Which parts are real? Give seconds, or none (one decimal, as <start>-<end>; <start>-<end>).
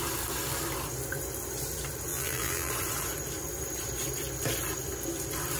0.0-2.1; 2.7-5.6